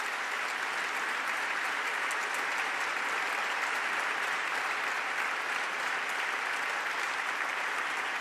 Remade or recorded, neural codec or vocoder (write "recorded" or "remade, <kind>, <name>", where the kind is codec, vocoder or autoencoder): remade, vocoder, BigVGAN v2